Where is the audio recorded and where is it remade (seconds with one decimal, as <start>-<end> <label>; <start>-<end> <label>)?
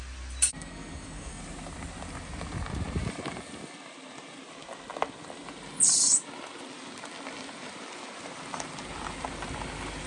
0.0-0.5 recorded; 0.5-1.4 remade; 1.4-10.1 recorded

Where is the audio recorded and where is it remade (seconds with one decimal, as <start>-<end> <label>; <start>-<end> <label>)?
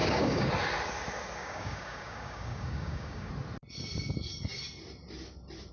0.0-0.5 remade; 0.5-1.4 recorded; 1.4-3.3 remade; 3.3-5.7 recorded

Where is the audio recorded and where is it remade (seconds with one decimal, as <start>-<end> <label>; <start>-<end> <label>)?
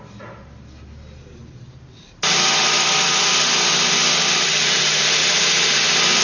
0.0-6.2 recorded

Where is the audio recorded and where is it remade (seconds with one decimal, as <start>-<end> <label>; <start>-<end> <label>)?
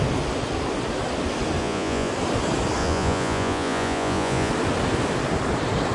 0.0-1.6 recorded; 1.6-2.1 remade; 2.1-2.8 recorded; 2.8-4.5 remade; 4.5-5.9 recorded